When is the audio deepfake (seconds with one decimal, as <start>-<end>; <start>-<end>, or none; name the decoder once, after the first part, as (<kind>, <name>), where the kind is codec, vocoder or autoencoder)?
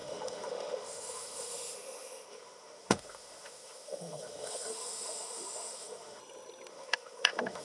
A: 0.0-6.2 (autoencoder, DAC-VAE); 6.7-7.6